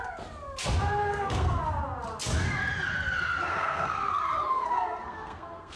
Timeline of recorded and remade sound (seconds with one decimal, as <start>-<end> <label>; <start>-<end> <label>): 0.0-1.0 recorded; 1.0-1.6 remade; 1.6-3.5 recorded; 3.5-4.1 remade; 4.1-4.5 recorded; 4.5-5.8 remade